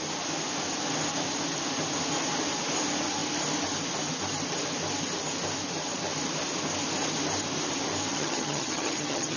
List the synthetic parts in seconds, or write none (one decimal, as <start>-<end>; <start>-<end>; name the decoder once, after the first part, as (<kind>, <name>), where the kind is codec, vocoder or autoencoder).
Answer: 8.1-9.4 (vocoder, HiFi-GAN)